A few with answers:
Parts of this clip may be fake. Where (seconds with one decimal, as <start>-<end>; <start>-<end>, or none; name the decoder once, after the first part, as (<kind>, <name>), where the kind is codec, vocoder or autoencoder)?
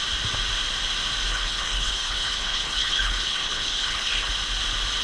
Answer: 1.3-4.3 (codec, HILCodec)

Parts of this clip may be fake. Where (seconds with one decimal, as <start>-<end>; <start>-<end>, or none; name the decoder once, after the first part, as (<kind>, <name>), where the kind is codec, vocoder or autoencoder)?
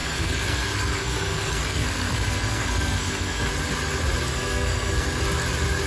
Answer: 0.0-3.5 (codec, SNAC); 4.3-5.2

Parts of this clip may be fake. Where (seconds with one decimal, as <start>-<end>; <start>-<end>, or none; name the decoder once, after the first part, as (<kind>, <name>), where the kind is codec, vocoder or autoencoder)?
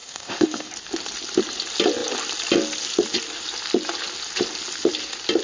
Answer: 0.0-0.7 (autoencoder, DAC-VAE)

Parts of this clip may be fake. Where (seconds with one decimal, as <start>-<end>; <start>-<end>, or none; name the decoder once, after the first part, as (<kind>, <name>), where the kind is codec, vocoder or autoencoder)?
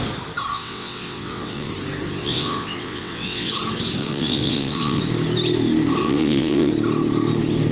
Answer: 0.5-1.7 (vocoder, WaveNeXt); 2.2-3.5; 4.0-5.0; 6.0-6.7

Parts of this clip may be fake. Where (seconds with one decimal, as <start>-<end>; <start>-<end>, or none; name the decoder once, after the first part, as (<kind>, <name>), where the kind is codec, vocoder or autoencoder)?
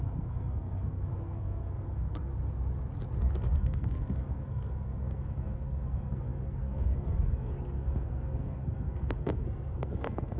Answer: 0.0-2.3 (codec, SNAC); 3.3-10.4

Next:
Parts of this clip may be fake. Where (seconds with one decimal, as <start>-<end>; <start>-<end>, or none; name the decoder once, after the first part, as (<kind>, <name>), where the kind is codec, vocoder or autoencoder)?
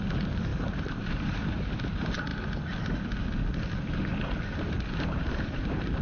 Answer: 0.0-2.3 (vocoder, BigVGAN v2); 4.8-6.0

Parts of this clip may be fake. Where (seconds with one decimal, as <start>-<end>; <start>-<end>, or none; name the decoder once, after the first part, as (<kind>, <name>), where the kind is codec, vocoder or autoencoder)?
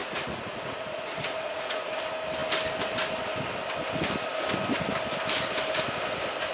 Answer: 0.0-2.0 (vocoder, Vocos)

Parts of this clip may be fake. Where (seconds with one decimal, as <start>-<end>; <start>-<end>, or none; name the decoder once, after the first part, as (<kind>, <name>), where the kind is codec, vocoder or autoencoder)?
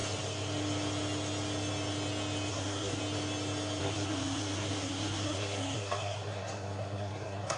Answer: 2.5-3.0 (codec, SNAC); 3.8-7.6